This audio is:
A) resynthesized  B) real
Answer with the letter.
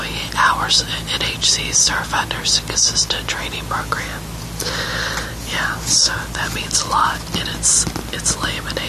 B